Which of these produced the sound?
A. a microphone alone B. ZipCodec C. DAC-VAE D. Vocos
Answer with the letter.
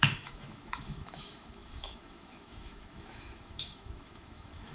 C